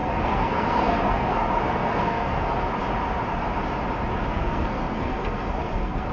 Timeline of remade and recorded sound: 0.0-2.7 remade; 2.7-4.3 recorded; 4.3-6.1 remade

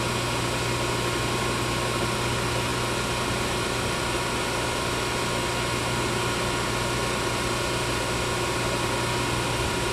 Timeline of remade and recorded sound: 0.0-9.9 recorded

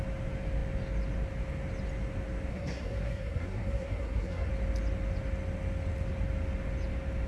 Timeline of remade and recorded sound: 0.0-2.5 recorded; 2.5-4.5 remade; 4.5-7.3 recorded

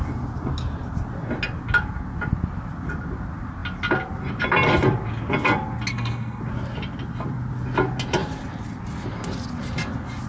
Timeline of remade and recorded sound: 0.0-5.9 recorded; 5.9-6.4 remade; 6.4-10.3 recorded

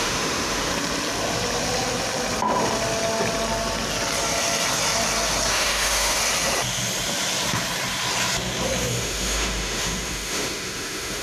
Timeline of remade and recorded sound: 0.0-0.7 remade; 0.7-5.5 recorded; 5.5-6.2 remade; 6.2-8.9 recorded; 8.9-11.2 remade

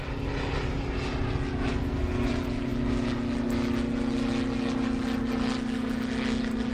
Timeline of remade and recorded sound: 0.0-1.7 recorded; 1.7-2.3 remade; 2.3-6.7 recorded

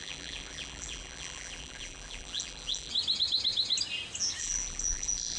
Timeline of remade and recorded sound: 0.0-2.9 remade; 2.9-4.4 recorded; 4.4-5.4 remade

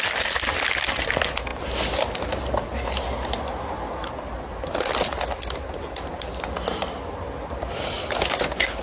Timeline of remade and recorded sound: 0.0-8.8 recorded